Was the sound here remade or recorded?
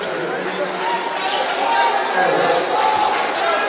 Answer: recorded